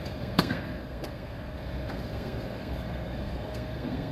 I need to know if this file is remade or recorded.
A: remade